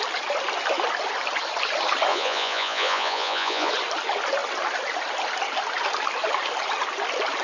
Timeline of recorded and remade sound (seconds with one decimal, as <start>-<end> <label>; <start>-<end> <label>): 0.0-2.1 recorded; 2.1-3.7 remade; 3.7-7.4 recorded